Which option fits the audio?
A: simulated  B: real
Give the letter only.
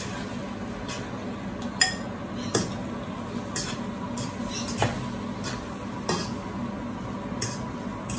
B